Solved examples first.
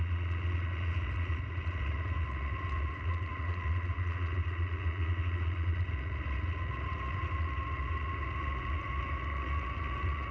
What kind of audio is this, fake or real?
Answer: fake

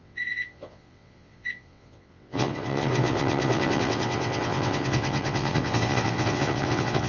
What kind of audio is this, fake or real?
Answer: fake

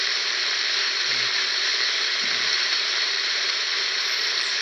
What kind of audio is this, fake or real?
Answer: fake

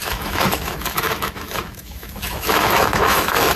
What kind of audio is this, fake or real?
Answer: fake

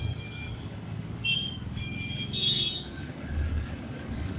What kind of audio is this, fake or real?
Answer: fake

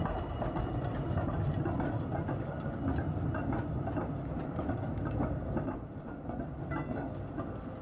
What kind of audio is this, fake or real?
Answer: real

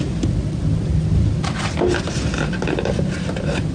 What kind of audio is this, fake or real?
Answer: real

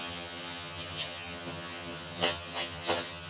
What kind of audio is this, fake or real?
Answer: fake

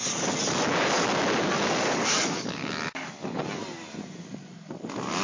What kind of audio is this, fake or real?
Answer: real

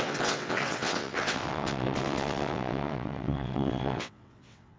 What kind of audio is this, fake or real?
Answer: fake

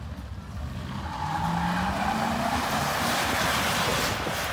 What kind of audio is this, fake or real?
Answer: real